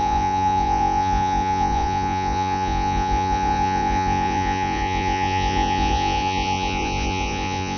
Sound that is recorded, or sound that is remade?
remade